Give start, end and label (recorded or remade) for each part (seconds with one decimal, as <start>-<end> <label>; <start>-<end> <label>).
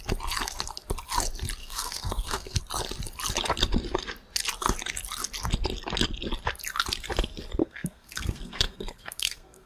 0.0-1.6 recorded; 1.6-2.6 remade; 2.6-7.6 recorded; 7.6-9.7 remade